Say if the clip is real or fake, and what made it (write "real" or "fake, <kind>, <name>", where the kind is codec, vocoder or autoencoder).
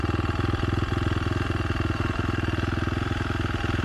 real